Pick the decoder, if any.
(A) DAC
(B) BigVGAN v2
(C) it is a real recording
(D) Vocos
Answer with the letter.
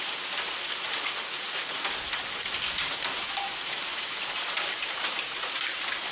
C